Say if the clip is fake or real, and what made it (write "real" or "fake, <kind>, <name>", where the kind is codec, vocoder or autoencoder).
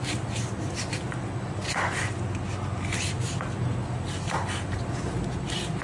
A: real